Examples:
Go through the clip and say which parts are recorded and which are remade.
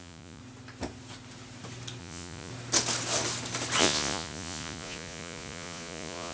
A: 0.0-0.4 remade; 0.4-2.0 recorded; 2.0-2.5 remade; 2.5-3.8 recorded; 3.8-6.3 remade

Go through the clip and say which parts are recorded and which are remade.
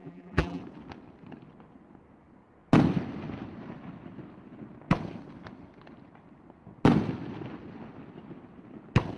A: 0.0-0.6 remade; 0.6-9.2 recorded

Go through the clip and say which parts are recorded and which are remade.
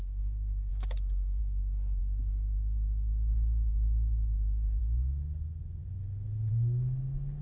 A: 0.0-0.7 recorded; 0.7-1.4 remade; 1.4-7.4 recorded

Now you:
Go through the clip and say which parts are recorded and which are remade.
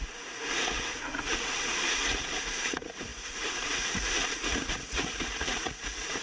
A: 0.0-6.2 remade